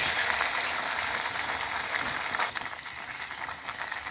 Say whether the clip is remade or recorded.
recorded